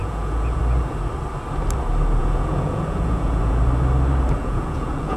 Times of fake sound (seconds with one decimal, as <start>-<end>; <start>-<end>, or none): 0.0-0.6; 2.2-3.6; 4.4-5.2